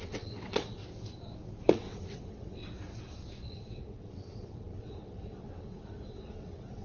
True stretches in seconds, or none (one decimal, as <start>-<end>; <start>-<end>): 0.8-1.7; 2.6-3.5